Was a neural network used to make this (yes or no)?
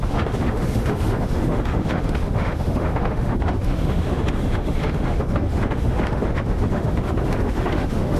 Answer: yes